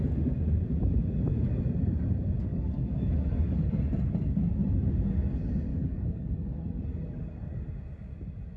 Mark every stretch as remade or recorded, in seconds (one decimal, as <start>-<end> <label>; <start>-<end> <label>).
0.0-2.5 recorded; 2.5-3.8 remade; 3.8-5.7 recorded; 5.7-6.8 remade; 6.8-8.6 recorded

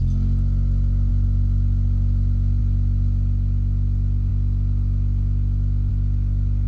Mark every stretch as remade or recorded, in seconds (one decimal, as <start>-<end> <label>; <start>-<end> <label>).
0.0-6.7 recorded

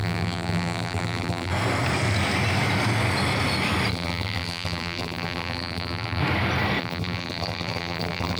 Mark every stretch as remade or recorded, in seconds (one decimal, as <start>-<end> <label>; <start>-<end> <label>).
0.0-1.5 remade; 1.5-3.9 recorded; 3.9-6.2 remade; 6.2-6.8 recorded; 6.8-8.4 remade

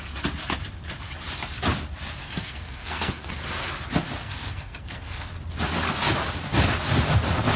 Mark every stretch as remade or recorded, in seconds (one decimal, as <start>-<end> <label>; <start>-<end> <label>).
0.0-2.2 recorded; 2.2-3.3 remade; 3.3-4.2 recorded; 4.2-5.3 remade; 5.3-7.6 recorded

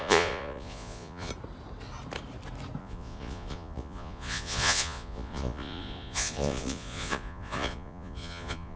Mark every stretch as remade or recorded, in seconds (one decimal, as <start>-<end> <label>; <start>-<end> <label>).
0.0-1.3 remade; 1.3-2.8 recorded; 2.8-8.8 remade